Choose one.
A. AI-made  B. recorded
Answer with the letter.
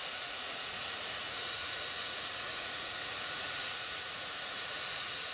A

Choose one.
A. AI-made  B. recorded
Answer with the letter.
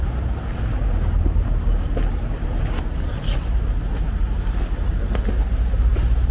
B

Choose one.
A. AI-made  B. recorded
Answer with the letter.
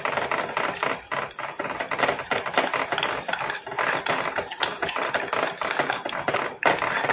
B